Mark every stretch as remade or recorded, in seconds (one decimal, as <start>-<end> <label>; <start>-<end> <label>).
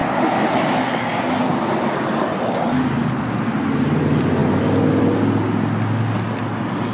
0.0-6.9 recorded